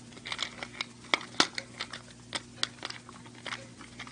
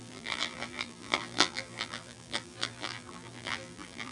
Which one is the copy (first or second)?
second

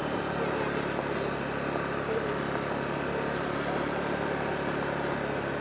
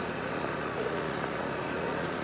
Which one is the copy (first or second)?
second